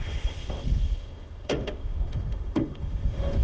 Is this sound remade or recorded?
remade